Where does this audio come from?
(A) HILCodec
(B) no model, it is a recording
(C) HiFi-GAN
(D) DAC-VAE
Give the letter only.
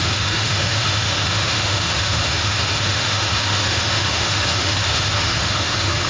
D